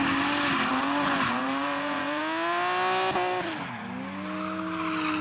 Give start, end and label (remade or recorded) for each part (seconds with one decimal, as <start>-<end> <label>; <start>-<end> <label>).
0.0-0.7 recorded; 0.7-2.2 remade; 2.2-5.2 recorded